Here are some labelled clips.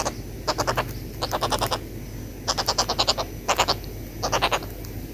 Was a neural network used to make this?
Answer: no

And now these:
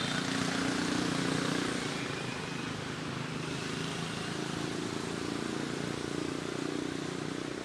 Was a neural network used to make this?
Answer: no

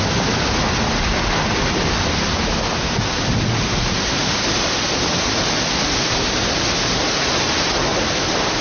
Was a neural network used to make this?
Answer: no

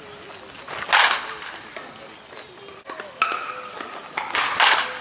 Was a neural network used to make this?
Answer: no